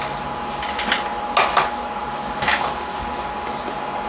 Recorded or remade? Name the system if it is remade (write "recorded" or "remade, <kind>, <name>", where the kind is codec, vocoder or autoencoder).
recorded